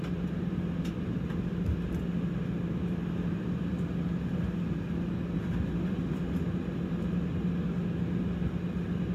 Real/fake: real